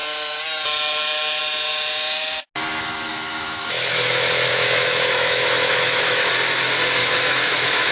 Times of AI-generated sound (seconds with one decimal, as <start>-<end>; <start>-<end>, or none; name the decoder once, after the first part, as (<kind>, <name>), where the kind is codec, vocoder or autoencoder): 3.1-6.3 (autoencoder, DAC-VAE); 7.0-7.9